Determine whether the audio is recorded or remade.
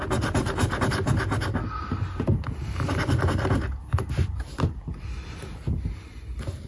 recorded